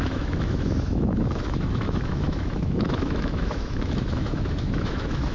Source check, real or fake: fake